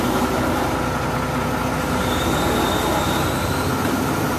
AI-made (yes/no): no